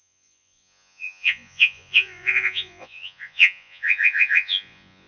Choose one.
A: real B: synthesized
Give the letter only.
B